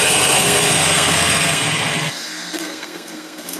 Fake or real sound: fake